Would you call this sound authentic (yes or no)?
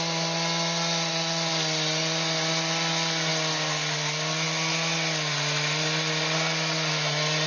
yes